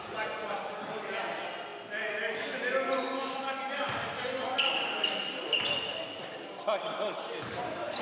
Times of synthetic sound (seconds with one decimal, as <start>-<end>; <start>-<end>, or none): none